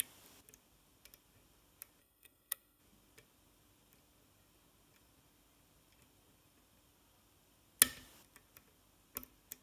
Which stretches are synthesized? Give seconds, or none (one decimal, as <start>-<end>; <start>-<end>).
2.0-2.8